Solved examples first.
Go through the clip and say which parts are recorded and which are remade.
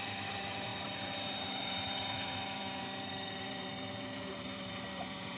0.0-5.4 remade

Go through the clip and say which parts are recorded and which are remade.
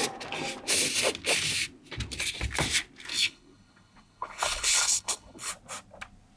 0.0-3.1 recorded; 3.1-5.5 remade; 5.5-6.4 recorded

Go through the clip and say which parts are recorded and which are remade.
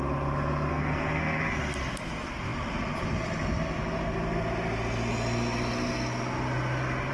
0.0-0.7 recorded; 0.7-1.5 remade; 1.5-7.1 recorded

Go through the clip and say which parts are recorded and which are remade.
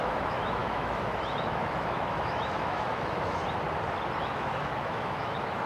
0.0-3.4 remade; 3.4-4.2 recorded; 4.2-5.7 remade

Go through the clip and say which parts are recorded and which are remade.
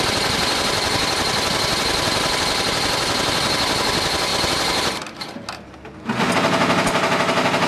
0.0-7.7 recorded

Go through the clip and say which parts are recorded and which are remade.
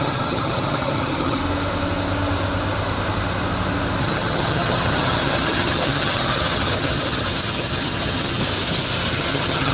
0.0-1.4 remade; 1.4-4.0 recorded; 4.0-8.4 remade; 8.4-9.1 recorded; 9.1-9.7 remade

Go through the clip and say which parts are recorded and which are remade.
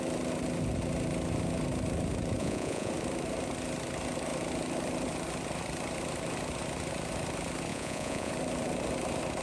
0.0-2.4 recorded; 2.4-2.9 remade; 2.9-7.7 recorded; 7.7-8.3 remade; 8.3-9.4 recorded